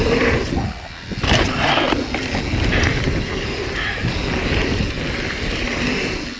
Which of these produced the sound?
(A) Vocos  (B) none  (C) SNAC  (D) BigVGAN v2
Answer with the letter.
B